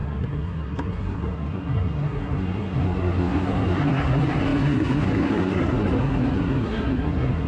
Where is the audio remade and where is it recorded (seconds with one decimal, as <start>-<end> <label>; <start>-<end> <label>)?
0.0-7.5 remade